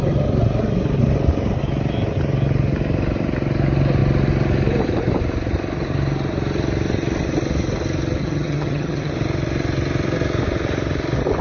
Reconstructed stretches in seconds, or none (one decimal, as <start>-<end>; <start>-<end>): 8.2-9.1